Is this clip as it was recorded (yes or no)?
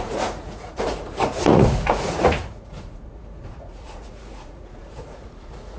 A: no